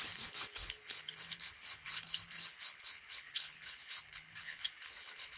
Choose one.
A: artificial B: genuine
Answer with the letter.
A